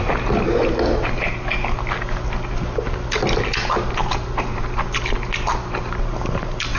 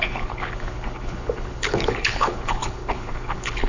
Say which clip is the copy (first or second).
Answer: second